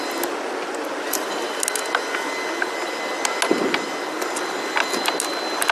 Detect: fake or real real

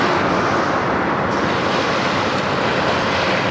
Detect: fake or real real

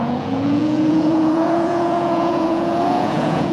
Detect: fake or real fake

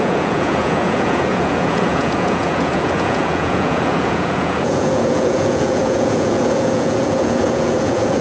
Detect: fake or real fake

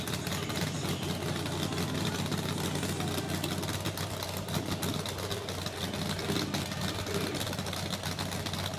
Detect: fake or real real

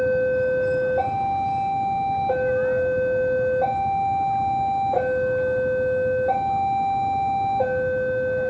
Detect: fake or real real